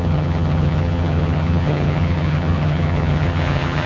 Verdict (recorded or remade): remade